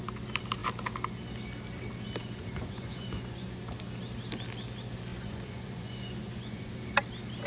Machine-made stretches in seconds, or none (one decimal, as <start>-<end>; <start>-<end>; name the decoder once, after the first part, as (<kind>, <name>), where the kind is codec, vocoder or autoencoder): 2.2-3.6 (vocoder, Vocos); 5.1-6.7